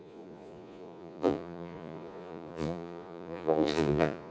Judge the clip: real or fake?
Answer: fake